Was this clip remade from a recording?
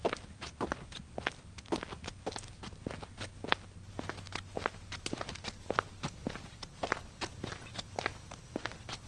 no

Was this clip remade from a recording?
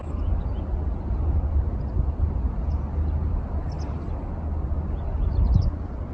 no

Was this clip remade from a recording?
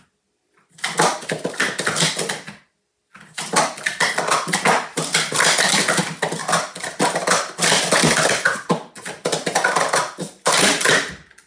no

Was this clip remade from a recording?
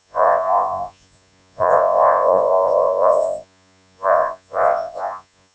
yes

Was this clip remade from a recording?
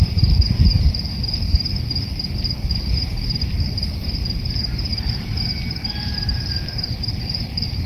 yes